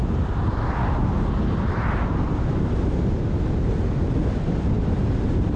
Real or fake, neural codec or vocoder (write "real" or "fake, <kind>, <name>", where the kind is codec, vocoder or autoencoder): real